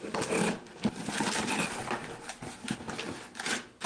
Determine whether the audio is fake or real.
real